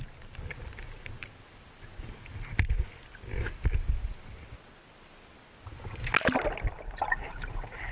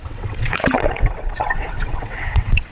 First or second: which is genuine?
first